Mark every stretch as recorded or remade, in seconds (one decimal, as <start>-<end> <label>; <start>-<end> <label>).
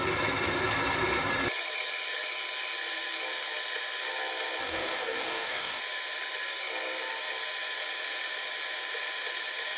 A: 0.0-4.6 recorded; 4.6-5.8 remade; 5.8-9.8 recorded